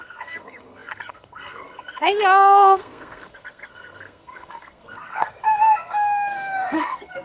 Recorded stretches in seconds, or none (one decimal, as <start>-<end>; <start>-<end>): none